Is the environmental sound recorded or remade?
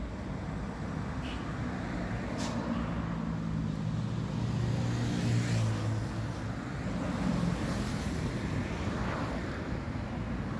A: recorded